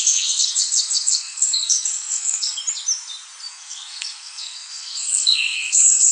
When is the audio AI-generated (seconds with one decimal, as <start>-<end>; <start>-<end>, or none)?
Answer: 0.0-2.6; 3.5-6.1